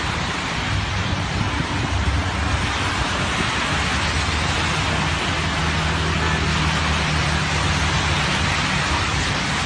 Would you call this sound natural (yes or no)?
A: yes